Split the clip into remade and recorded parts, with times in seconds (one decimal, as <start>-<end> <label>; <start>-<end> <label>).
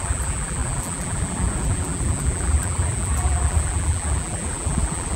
0.0-5.2 remade